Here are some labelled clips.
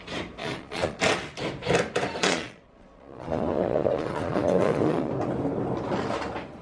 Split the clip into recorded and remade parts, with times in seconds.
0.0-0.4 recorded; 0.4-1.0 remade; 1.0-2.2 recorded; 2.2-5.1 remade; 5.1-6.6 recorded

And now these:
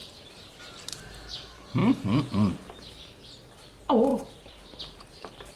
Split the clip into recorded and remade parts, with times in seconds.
0.0-0.5 remade; 0.5-4.1 recorded; 4.1-4.8 remade; 4.8-5.6 recorded